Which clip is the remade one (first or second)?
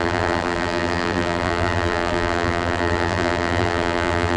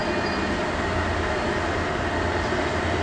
first